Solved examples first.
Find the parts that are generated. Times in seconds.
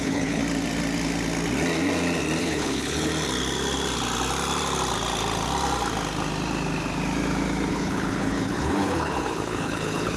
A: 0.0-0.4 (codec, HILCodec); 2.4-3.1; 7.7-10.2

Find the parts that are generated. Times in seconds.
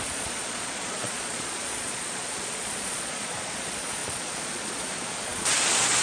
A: 0.0-6.0 (vocoder, Vocos)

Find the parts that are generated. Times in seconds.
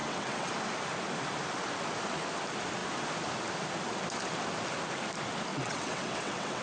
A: 0.0-0.5 (vocoder, WaveNeXt); 5.5-6.6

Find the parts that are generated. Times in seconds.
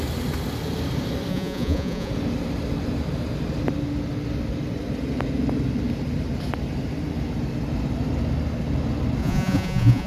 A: 1.3-2.1 (vocoder, Vocos); 9.2-10.1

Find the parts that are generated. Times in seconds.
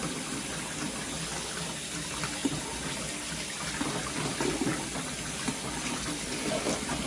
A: none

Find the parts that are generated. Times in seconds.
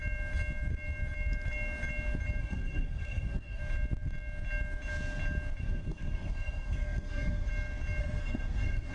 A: 2.4-3.6 (codec, SNAC); 5.6-7.5; 8.0-8.9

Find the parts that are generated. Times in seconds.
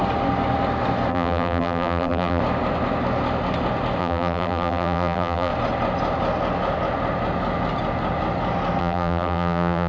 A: 1.1-2.4 (vocoder, BigVGAN v2); 4.0-5.5; 8.8-9.9